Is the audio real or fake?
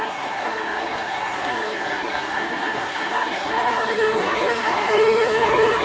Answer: fake